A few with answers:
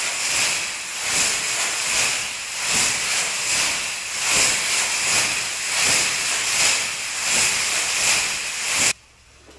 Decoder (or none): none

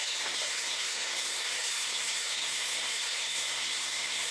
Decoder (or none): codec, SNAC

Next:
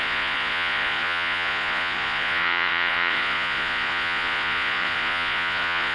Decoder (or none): vocoder, Vocos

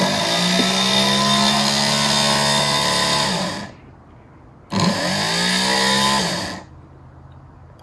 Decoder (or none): none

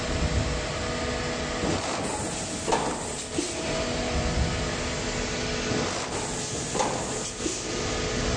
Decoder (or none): none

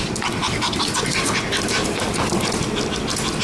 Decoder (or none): none